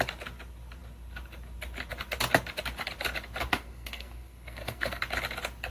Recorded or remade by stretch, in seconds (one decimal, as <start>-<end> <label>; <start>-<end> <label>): 0.0-3.5 recorded; 3.5-5.0 remade; 5.0-5.7 recorded